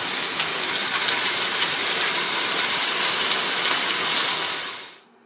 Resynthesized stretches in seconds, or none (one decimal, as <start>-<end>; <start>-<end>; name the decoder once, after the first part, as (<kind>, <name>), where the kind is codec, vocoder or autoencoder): 0.8-3.3 (vocoder, BigVGAN v2)